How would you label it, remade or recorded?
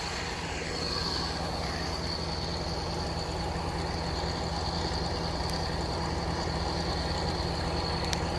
recorded